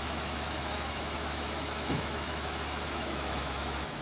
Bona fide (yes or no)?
no